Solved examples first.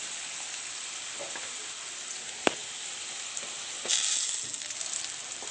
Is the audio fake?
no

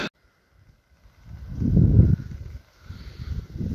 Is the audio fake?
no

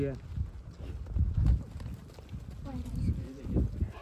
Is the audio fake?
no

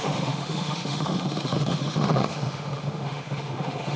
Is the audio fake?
yes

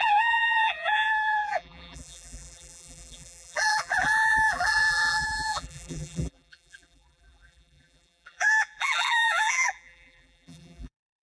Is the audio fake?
yes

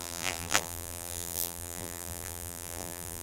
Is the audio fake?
yes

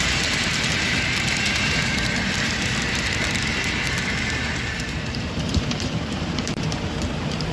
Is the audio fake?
yes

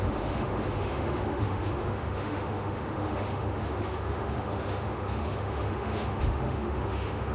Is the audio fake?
yes